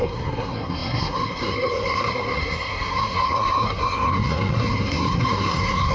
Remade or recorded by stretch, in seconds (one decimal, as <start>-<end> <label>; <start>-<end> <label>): 0.0-5.9 remade